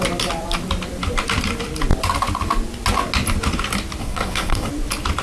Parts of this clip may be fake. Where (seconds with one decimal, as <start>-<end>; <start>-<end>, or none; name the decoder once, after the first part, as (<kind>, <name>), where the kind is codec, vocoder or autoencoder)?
4.0-4.7 (codec, SNAC)